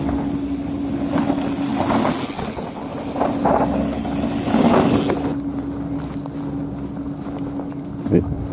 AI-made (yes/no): no